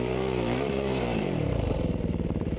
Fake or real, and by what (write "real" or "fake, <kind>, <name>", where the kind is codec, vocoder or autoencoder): fake, vocoder, BigVGAN v2